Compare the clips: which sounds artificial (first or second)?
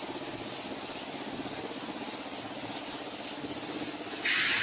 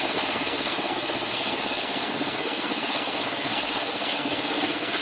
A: second